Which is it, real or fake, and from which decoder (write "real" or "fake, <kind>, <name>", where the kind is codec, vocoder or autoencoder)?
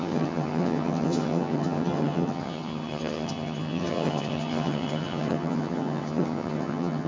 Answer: fake, vocoder, HiFi-GAN